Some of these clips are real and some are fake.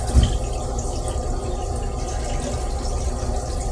real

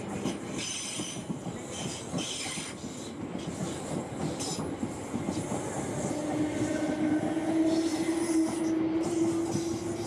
real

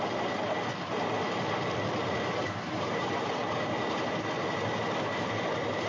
real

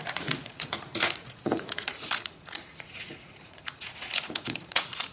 fake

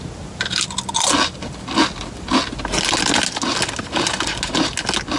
real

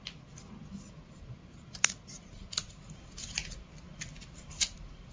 real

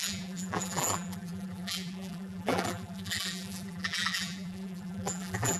fake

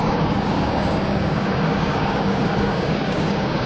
fake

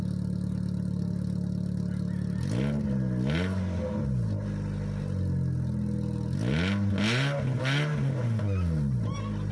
real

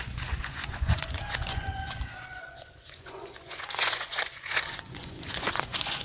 fake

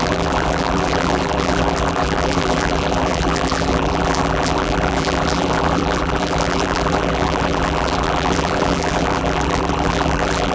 fake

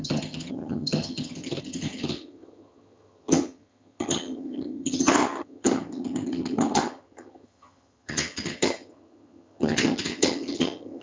fake